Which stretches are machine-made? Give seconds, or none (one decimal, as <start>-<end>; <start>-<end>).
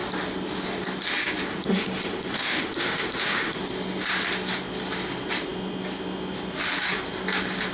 1.5-3.6